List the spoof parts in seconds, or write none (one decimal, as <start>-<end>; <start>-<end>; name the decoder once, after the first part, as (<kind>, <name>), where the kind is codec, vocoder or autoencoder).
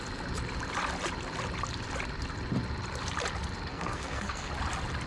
3.7-4.5 (codec, SNAC)